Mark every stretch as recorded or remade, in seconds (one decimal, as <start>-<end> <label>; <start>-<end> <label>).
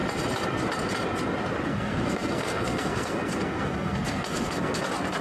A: 0.0-1.7 recorded; 1.7-4.8 remade; 4.8-5.2 recorded